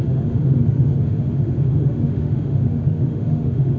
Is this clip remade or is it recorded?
remade